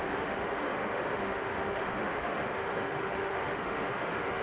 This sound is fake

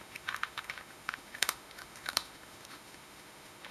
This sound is fake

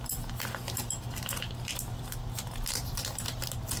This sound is real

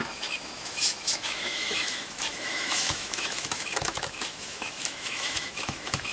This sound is fake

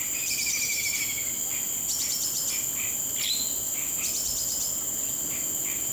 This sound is real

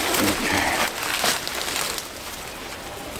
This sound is real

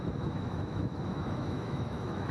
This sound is fake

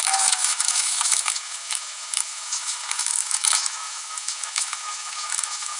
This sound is fake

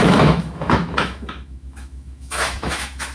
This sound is fake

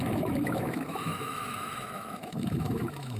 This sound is fake